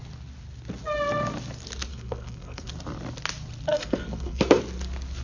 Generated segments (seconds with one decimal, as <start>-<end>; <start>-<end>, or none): 1.9-2.7; 3.7-4.6